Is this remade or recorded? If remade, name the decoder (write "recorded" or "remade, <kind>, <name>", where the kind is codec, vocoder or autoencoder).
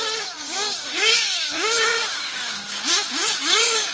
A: remade, codec, DAC